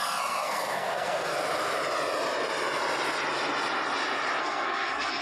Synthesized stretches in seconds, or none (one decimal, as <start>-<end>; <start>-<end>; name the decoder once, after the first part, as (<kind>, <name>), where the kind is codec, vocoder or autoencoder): 0.0-1.3 (codec, SNAC); 4.4-5.2